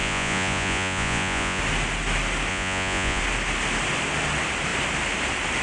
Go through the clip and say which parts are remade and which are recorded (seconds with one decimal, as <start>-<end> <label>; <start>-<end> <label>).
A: 0.0-1.6 remade; 1.6-2.5 recorded; 2.5-3.2 remade; 3.2-5.6 recorded